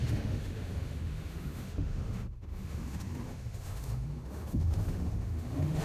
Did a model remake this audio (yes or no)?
yes